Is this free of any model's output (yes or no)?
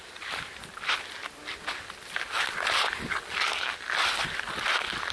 yes